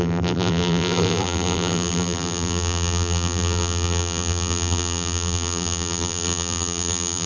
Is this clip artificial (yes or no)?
yes